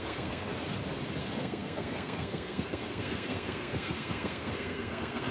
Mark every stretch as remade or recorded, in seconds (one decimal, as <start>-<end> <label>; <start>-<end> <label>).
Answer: 0.0-0.5 remade; 0.5-1.2 recorded; 1.2-5.3 remade